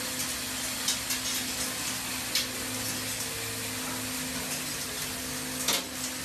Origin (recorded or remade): recorded